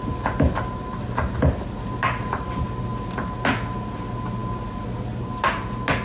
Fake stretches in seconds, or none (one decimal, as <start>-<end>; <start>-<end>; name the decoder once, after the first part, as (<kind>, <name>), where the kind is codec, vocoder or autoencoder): none